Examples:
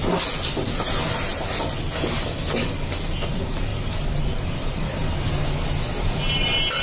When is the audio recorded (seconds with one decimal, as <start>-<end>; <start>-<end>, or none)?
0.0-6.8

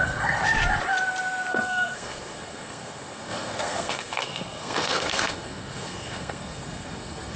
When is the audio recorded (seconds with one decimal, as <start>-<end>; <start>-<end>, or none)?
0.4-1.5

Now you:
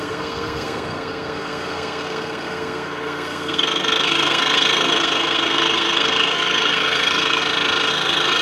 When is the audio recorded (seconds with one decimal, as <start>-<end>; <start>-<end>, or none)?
7.4-7.9

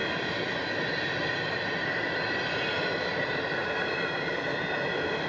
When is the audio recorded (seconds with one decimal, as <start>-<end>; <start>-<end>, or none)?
0.0-5.3

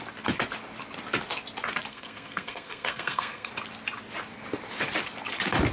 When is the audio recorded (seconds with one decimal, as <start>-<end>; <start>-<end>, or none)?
0.0-1.9; 3.5-5.7